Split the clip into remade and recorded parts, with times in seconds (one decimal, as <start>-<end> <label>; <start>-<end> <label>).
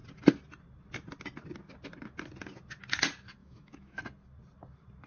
0.0-3.4 recorded; 3.4-4.0 remade; 4.0-5.1 recorded